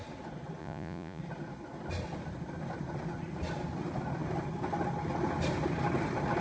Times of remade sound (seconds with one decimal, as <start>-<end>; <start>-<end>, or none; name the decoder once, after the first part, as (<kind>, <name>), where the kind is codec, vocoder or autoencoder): 0.6-1.2 (vocoder, Vocos)